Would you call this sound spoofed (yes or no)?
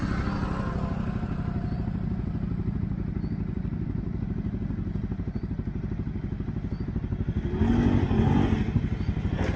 no